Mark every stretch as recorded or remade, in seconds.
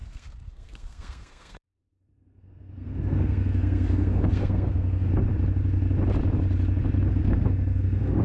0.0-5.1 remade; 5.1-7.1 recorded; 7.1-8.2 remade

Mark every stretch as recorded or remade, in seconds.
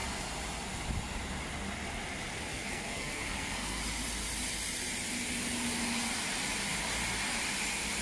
0.0-2.5 recorded; 2.5-3.8 remade; 3.8-8.0 recorded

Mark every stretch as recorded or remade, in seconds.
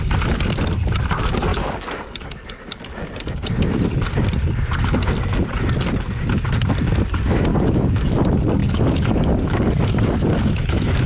0.0-1.5 recorded; 1.5-2.8 remade; 2.8-7.5 recorded; 7.5-8.2 remade; 8.2-8.6 recorded; 8.6-10.6 remade; 10.6-11.1 recorded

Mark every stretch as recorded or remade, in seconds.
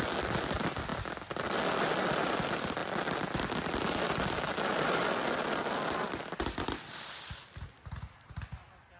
0.0-9.0 recorded